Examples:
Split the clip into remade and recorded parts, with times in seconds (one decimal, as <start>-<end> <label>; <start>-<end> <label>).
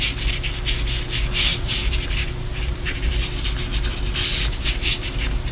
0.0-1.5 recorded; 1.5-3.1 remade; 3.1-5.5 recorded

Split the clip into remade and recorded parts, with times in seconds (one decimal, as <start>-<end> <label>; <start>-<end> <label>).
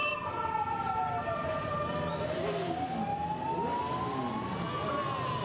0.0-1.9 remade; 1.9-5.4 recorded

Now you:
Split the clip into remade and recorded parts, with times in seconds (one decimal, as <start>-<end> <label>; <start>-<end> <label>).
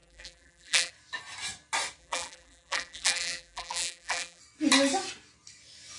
0.0-0.9 remade; 0.9-2.0 recorded; 2.0-4.4 remade; 4.4-6.0 recorded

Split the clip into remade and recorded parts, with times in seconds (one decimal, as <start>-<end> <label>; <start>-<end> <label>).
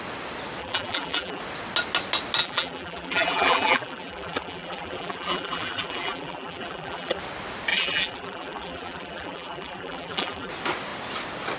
0.0-0.6 recorded; 0.6-1.4 remade; 1.4-2.4 recorded; 2.4-7.2 remade; 7.2-7.7 recorded; 7.7-10.5 remade; 10.5-11.6 recorded